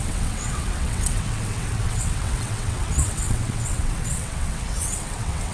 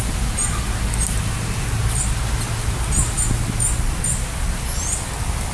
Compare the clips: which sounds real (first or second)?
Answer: second